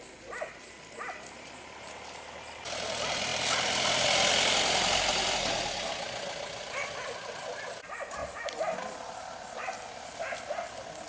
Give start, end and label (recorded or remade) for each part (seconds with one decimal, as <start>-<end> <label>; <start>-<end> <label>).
0.0-11.1 recorded